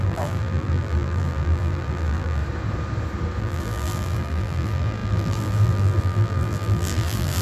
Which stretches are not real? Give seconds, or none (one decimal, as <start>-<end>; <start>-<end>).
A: 0.0-2.4; 3.4-7.4